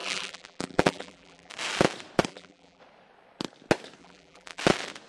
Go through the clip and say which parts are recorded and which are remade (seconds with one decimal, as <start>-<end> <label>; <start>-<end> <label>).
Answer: 0.0-1.5 remade; 1.5-2.3 recorded; 2.3-2.8 remade; 2.8-4.0 recorded; 4.0-4.6 remade; 4.6-5.1 recorded